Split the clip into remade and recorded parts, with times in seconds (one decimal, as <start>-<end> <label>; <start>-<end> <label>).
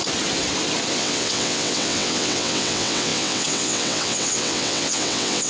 0.0-0.9 recorded; 0.9-5.5 remade